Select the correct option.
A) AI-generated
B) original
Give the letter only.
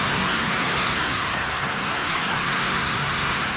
A